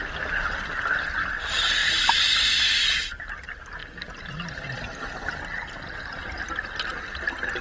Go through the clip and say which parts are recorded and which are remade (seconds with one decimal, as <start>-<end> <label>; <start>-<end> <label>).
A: 0.0-7.6 recorded